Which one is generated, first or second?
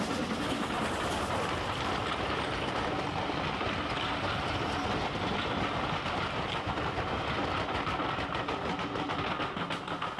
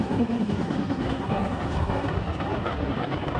second